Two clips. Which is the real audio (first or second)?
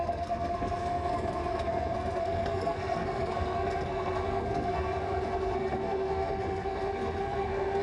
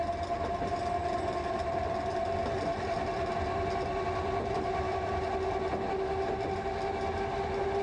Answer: second